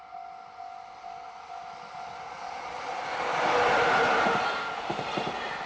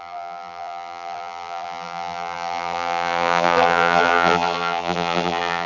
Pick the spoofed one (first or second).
second